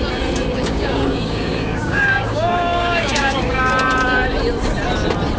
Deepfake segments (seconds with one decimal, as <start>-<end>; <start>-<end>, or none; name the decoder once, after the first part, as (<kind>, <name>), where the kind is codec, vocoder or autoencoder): 0.5-3.7 (codec, DAC)

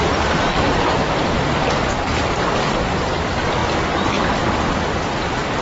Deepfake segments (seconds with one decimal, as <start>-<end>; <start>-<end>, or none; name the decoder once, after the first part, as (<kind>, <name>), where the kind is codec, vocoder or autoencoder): 1.0-3.1 (vocoder, BigVGAN v2)

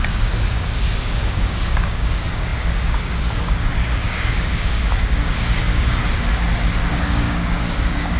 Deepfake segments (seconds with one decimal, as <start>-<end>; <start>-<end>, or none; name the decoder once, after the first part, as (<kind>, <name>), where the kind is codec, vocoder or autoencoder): 0.0-6.0 (codec, DAC); 6.9-8.2